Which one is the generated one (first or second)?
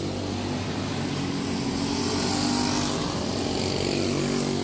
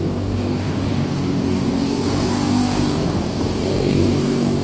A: second